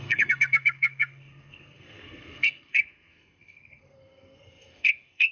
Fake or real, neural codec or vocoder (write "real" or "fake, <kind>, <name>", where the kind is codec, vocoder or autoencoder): fake, codec, SNAC